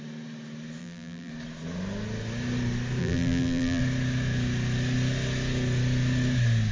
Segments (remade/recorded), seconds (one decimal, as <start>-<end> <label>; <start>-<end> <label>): 0.0-0.8 recorded; 0.8-1.3 remade; 1.3-3.0 recorded; 3.0-3.8 remade; 3.8-6.7 recorded